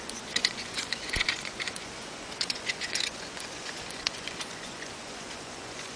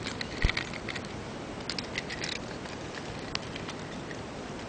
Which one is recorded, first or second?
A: second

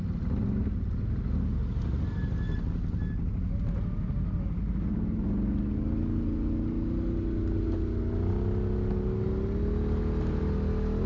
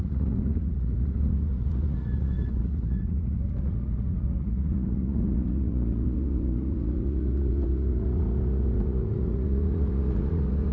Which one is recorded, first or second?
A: first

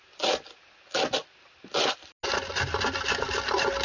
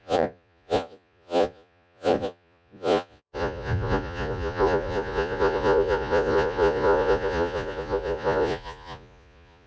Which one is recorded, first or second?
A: first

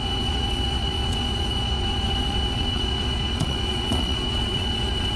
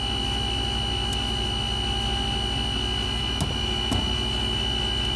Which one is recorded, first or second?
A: second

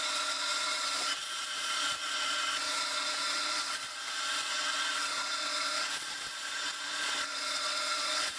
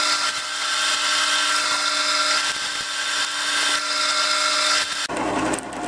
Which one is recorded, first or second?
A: second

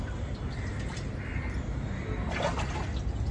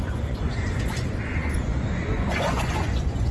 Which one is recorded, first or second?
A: first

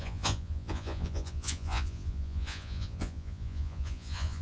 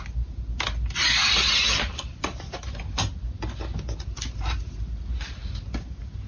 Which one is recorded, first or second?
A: second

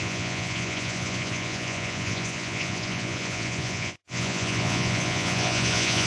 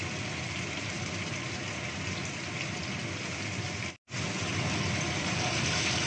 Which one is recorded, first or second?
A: second